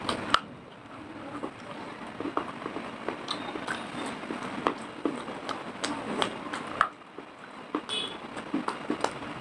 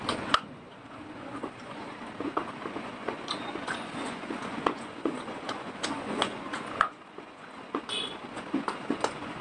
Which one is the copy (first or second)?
second